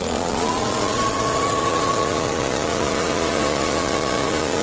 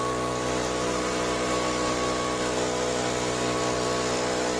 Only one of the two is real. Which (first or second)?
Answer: second